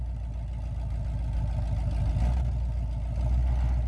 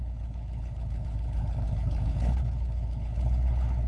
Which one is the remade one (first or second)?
second